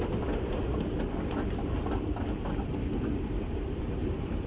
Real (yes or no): yes